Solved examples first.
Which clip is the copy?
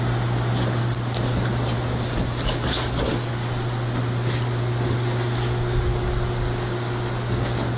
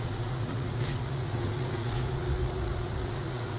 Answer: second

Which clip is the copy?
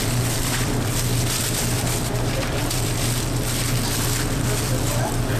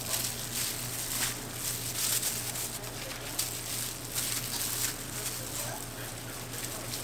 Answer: first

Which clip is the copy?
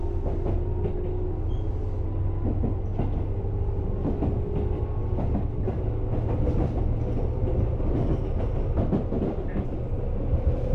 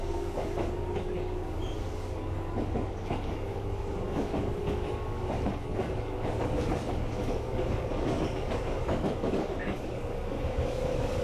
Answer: second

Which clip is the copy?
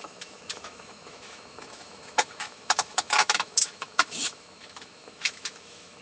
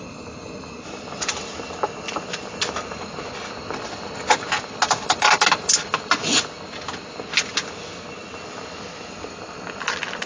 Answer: first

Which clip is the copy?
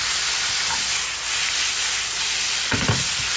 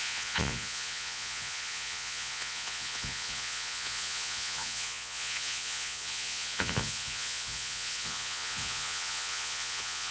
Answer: second